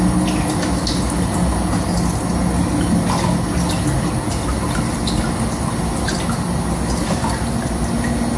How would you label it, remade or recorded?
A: recorded